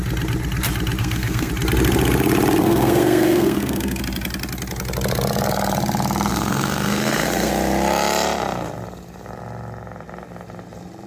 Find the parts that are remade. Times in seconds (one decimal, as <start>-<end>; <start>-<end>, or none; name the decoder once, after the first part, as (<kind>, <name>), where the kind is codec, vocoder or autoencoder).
1.0-1.5 (codec, SNAC); 2.6-4.0; 6.3-7.5